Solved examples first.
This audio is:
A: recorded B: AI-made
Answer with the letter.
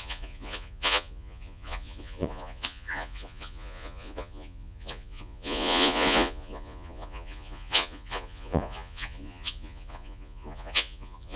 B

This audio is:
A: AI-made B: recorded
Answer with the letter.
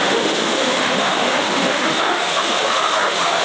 A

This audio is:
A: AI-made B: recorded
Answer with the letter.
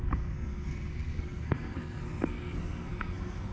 A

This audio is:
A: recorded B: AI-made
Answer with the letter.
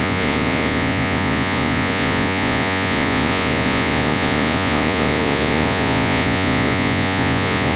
B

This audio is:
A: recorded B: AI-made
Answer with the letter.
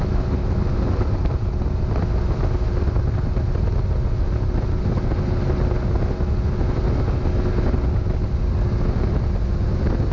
A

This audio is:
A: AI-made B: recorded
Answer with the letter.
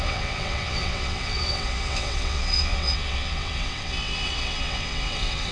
A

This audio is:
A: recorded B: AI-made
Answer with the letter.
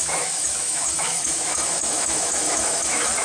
B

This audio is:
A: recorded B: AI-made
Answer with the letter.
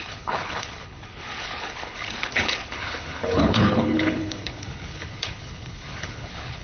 B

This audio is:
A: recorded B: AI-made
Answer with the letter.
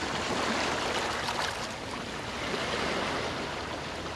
A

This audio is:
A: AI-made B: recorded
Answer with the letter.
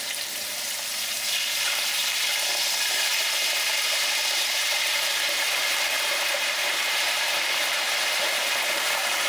A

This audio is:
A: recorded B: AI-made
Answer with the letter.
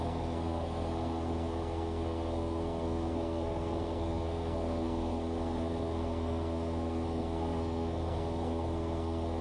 B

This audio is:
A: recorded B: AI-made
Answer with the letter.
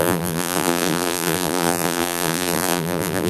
B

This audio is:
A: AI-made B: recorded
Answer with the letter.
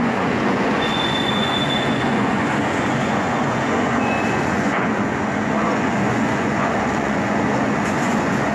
A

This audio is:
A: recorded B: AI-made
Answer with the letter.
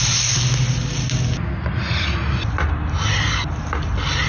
A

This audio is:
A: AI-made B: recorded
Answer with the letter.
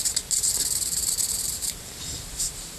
A